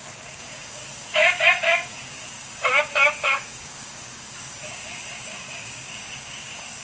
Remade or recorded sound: remade